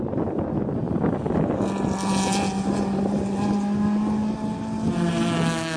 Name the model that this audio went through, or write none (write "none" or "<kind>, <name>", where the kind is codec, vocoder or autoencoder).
none